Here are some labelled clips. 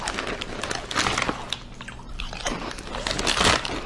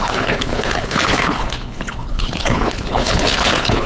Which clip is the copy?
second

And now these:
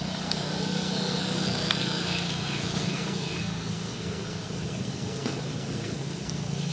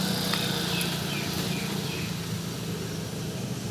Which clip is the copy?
first